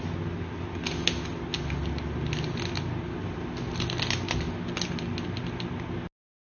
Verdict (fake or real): real